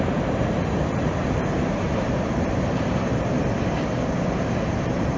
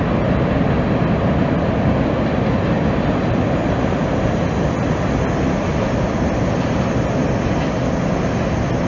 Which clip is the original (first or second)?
second